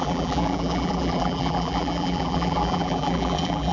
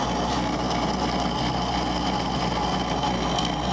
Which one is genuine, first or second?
second